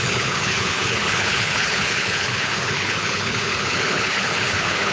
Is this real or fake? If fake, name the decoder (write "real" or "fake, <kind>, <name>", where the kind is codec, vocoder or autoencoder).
fake, codec, HILCodec